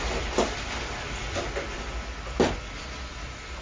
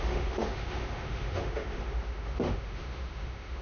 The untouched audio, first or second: first